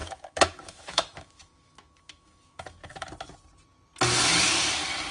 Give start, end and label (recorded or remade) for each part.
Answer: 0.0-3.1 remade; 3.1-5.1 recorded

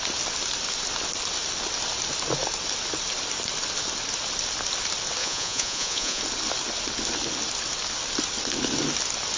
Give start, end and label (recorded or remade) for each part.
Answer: 0.0-5.2 recorded; 5.2-6.2 remade; 6.2-9.4 recorded

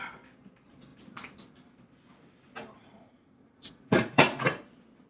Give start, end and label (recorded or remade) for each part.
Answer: 0.0-2.8 recorded; 2.8-4.6 remade; 4.6-5.1 recorded

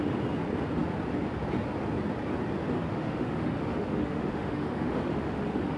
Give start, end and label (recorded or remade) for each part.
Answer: 0.0-2.9 recorded; 2.9-5.8 remade

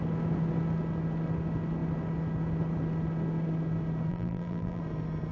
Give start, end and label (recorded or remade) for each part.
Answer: 0.0-4.1 recorded; 4.1-4.8 remade; 4.8-5.3 recorded

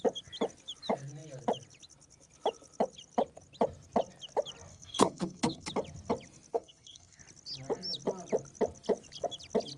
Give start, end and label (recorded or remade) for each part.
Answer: 0.0-4.7 recorded; 4.7-5.7 remade; 5.7-6.5 recorded; 6.5-7.2 remade; 7.2-9.8 recorded

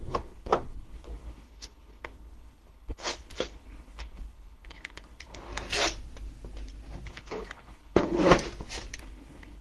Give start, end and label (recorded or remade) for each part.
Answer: 0.0-5.5 remade; 5.5-7.1 recorded; 7.1-8.3 remade; 8.3-9.0 recorded; 9.0-9.6 remade